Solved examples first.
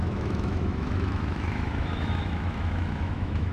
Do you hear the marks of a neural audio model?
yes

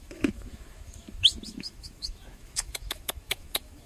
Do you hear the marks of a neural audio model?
yes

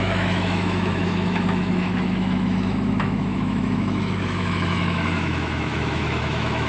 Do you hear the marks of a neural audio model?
yes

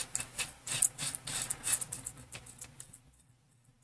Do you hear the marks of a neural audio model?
no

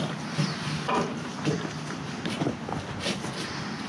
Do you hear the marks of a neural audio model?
no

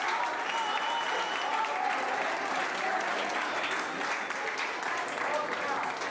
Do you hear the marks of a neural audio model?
no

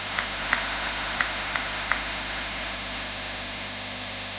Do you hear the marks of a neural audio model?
yes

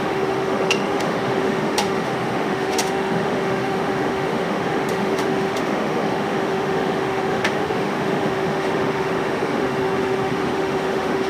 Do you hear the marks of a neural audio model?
yes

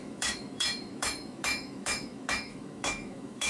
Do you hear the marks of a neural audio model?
yes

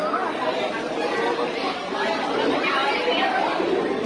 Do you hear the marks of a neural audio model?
no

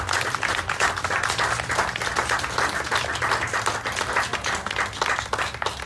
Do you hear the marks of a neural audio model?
no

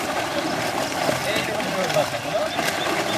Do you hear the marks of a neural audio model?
no